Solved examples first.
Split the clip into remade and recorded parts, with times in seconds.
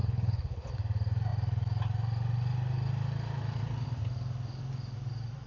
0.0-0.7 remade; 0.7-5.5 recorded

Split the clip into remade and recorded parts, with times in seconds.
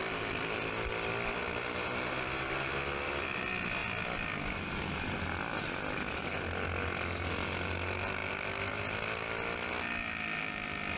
0.0-11.0 recorded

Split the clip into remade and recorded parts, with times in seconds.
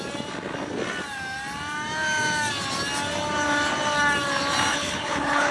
0.0-4.7 recorded; 4.7-5.5 remade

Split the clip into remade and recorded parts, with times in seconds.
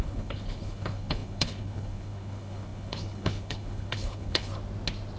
0.0-4.5 remade; 4.5-5.2 recorded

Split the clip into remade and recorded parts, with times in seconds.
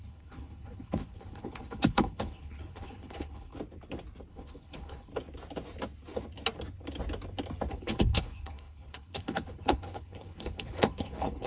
0.0-3.5 remade; 3.5-4.3 recorded; 4.3-5.1 remade; 5.1-7.7 recorded; 7.7-11.5 remade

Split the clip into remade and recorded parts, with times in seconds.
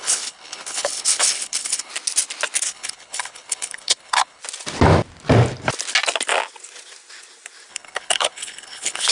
0.0-1.9 remade; 1.9-2.7 recorded; 2.7-4.4 remade; 4.4-7.7 recorded; 7.7-9.1 remade